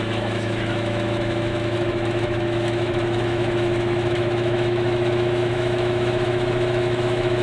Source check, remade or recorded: remade